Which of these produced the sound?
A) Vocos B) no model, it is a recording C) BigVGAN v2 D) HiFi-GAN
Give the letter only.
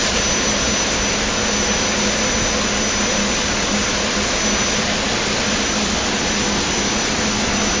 B